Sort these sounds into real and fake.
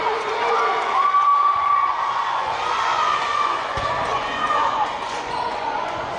fake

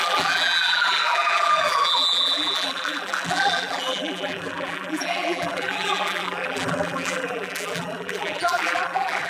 fake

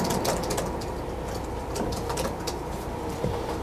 real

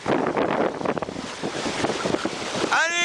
real